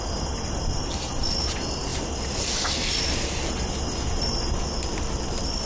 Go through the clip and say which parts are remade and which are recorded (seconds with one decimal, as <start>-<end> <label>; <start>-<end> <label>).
0.0-5.7 recorded